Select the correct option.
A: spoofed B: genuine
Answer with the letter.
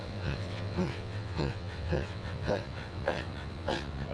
A